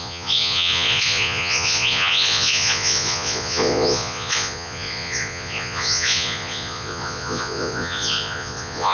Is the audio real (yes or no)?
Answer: no